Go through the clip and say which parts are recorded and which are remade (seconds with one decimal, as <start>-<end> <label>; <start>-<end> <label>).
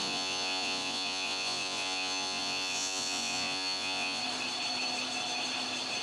0.0-4.2 remade; 4.2-6.0 recorded